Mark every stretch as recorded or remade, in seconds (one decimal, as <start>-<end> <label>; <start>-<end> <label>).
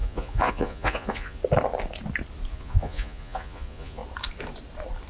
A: 0.0-1.4 remade; 1.4-2.5 recorded; 2.5-4.0 remade; 4.0-5.1 recorded